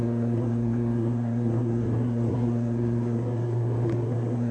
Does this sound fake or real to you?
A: fake